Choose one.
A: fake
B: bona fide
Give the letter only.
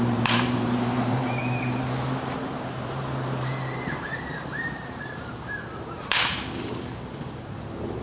A